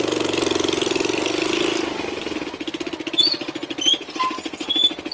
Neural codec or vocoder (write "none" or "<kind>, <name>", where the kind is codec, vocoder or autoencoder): none